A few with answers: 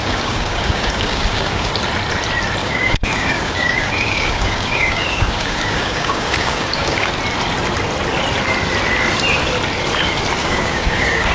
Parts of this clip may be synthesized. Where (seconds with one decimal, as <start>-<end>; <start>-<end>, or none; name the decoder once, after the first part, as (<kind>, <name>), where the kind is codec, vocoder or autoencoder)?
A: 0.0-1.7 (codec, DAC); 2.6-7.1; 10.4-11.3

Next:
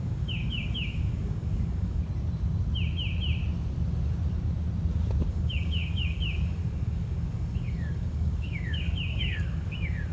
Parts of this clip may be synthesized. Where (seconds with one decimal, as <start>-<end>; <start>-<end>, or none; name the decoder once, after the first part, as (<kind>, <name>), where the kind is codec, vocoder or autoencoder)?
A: 0.0-2.0 (codec, DAC); 5.3-10.1

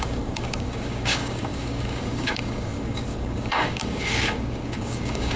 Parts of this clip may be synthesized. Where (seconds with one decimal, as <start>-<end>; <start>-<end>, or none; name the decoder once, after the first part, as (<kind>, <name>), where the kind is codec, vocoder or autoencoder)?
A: 0.0-5.4 (codec, DAC)

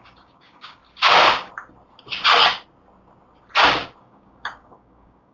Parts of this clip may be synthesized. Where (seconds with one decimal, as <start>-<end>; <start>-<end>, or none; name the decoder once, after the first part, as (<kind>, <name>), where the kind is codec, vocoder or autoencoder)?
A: 0.0-0.8 (codec, DAC); 4.0-5.3

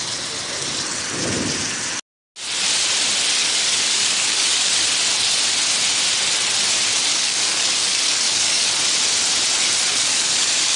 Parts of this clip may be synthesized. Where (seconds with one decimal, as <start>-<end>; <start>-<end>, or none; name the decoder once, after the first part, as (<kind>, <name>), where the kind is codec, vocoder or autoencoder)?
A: 3.4-4.7 (codec, DAC); 7.1-8.7; 9.9-10.8